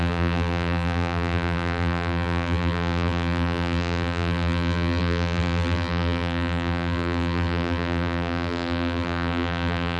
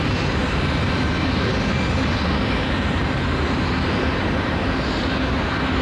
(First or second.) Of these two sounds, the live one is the second